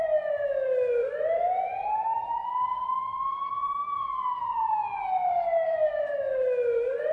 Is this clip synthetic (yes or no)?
no